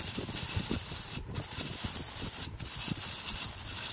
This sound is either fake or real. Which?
real